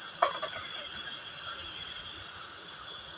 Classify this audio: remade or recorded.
remade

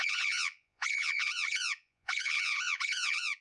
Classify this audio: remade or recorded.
remade